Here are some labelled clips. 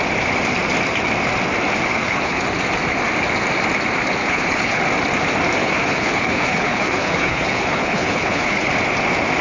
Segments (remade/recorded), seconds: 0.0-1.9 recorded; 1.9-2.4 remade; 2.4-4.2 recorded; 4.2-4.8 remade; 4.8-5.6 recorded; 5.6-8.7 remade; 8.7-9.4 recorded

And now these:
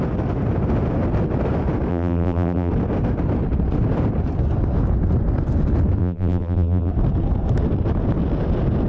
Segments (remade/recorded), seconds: 0.0-1.9 recorded; 1.9-2.7 remade; 2.7-6.0 recorded; 6.0-6.9 remade; 6.9-8.9 recorded

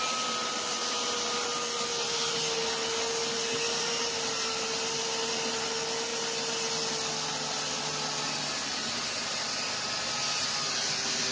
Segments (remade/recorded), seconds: 0.0-11.3 recorded

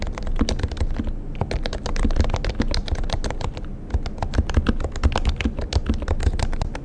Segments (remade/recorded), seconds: 0.0-6.8 recorded

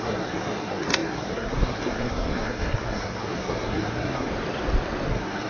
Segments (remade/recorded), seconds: 0.0-4.3 remade; 4.3-5.1 recorded; 5.1-5.5 remade

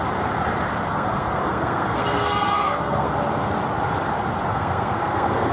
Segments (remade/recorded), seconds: 0.0-0.9 recorded; 0.9-3.1 remade; 3.1-4.5 recorded; 4.5-5.5 remade

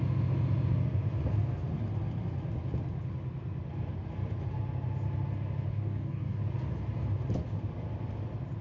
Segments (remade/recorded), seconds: 0.0-5.7 recorded; 5.7-6.4 remade; 6.4-8.6 recorded

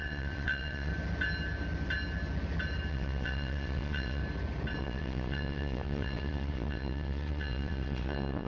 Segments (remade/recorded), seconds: 0.0-0.9 remade; 0.9-2.9 recorded; 2.9-4.2 remade; 4.2-4.8 recorded; 4.8-8.5 remade